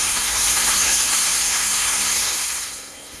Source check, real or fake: fake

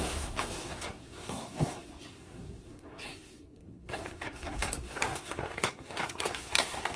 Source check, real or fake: fake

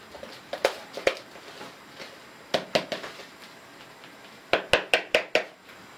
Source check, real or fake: real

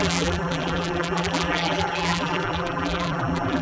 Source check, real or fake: fake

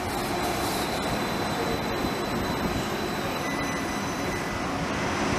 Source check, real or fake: real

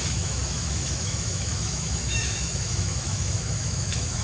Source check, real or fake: fake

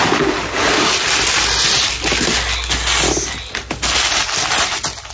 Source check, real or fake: real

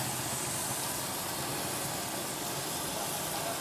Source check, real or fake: real